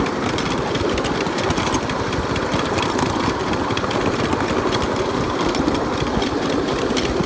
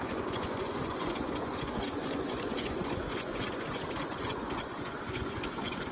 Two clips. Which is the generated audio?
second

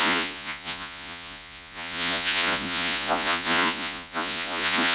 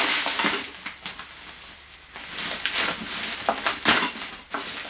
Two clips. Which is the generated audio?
first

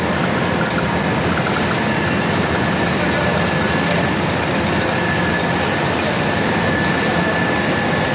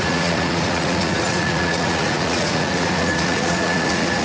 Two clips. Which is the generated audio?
second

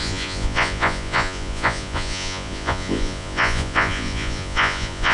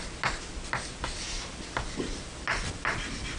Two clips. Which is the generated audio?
first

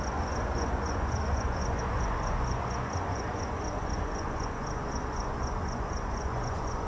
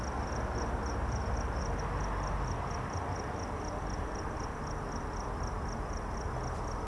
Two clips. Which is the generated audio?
first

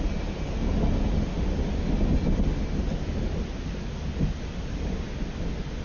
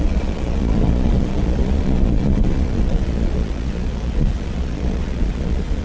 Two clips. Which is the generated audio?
second